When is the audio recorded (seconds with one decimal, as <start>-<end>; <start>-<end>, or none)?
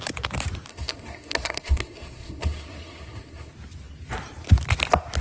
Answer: 0.0-0.7; 3.5-5.2